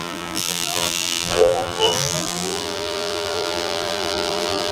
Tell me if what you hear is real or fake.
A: fake